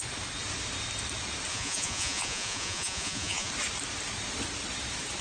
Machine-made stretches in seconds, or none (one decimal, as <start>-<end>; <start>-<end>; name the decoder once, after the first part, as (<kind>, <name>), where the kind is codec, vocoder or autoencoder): 1.5-3.5 (vocoder, Vocos)